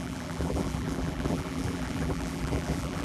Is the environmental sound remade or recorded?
remade